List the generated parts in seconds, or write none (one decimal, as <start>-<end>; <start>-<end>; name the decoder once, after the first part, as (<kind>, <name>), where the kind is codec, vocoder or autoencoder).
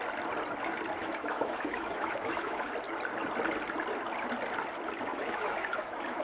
1.0-2.7 (autoencoder, DAC-VAE); 5.1-6.2